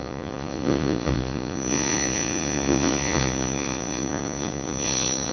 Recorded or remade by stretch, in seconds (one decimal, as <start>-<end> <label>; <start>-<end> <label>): 0.0-5.3 remade